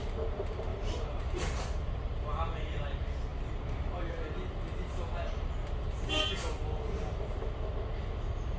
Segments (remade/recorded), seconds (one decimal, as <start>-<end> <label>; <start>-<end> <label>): 0.0-0.7 recorded; 0.7-2.1 remade; 2.1-8.6 recorded